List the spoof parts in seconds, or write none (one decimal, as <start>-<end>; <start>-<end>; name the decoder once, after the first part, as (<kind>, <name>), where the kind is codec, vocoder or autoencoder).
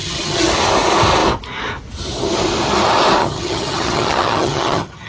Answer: 0.0-0.5 (vocoder, HiFi-GAN); 3.2-5.1